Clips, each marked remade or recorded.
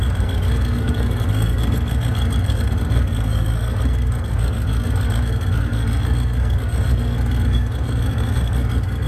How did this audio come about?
remade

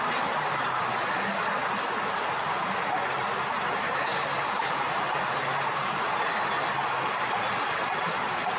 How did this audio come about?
recorded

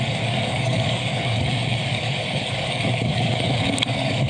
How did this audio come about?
remade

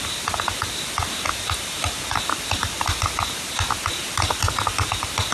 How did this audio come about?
recorded